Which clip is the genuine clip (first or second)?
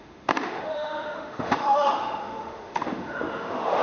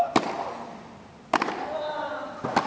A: second